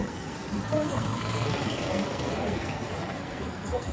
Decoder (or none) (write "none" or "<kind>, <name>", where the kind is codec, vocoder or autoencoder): codec, SNAC